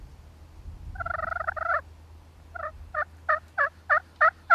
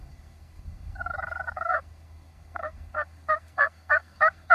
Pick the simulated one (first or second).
second